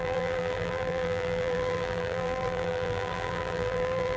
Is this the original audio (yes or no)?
no